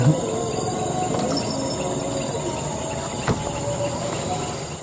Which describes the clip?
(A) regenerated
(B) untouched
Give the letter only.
B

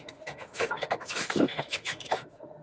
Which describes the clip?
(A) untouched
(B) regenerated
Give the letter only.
B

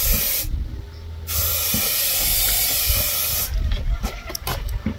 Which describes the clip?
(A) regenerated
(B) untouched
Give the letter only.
B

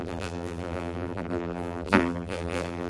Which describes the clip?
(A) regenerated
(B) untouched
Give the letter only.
A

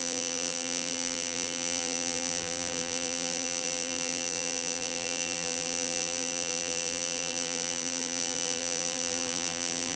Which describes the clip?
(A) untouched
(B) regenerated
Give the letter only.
B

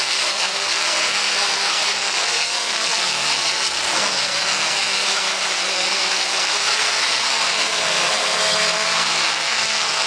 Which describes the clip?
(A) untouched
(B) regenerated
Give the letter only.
B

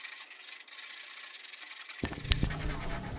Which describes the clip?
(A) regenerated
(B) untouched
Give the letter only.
B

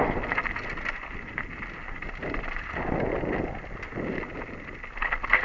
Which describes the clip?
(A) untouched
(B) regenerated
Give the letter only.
A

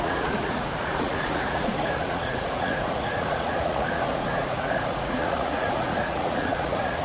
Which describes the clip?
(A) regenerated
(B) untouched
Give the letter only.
A